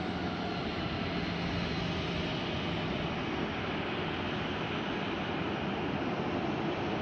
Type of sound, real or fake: real